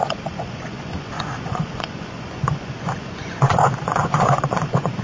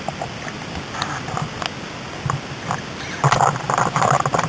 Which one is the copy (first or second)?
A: first